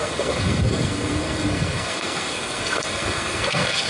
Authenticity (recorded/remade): remade